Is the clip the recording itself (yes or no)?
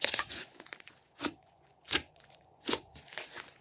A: no